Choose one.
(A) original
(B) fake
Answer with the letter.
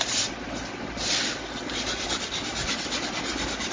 A